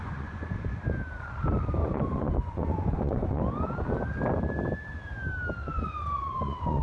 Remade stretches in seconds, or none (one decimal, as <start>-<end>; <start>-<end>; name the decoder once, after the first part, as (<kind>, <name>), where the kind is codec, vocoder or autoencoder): 0.0-0.8 (vocoder, Vocos); 1.8-3.4; 5.6-6.8